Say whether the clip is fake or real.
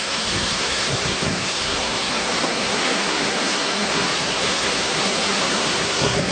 fake